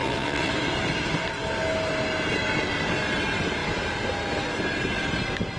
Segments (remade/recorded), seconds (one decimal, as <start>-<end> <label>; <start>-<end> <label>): 0.0-0.5 remade; 0.5-5.6 recorded